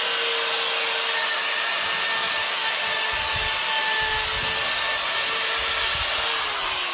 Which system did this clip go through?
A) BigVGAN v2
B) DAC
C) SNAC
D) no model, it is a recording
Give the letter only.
D